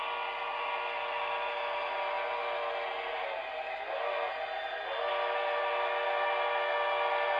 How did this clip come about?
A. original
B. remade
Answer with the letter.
A